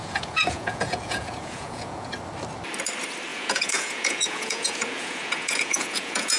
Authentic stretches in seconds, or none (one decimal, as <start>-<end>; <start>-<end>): 2.1-3.3